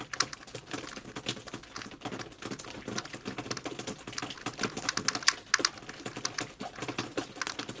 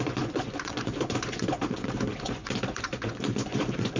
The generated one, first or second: second